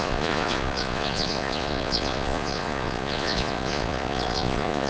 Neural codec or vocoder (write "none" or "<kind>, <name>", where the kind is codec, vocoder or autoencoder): vocoder, Vocos